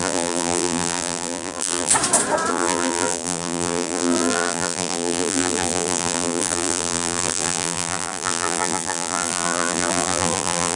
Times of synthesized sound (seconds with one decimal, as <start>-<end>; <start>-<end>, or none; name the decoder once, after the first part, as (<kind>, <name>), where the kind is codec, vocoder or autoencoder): 0.0-1.9 (vocoder, BigVGAN v2); 2.5-10.8